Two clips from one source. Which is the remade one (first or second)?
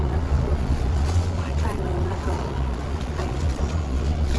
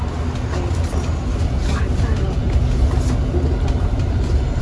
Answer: first